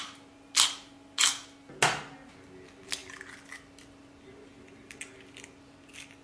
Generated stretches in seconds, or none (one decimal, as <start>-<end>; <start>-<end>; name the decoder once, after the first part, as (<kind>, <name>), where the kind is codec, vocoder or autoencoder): none